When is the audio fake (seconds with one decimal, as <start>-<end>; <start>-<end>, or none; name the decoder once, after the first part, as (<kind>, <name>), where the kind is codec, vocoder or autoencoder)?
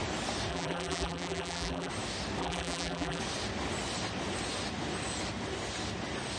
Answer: 0.5-1.9 (vocoder, BigVGAN v2); 2.4-3.2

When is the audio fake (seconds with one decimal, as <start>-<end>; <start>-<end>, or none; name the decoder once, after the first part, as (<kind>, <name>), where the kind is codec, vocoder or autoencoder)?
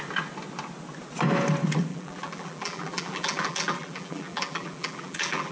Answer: 1.9-5.5 (vocoder, BigVGAN v2)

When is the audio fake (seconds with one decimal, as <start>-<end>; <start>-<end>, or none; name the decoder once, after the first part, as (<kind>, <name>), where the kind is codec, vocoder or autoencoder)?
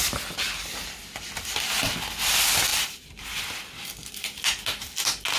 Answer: 2.7-3.4 (vocoder, BigVGAN v2)